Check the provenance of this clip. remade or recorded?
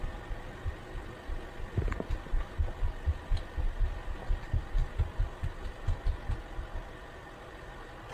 recorded